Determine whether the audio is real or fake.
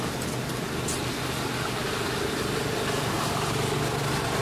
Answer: real